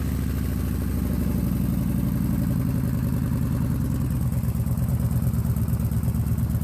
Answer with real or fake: real